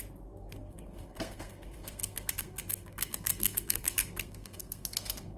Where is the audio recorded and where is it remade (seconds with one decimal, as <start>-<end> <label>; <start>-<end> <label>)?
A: 0.0-5.4 remade